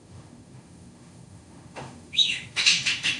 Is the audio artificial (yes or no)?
yes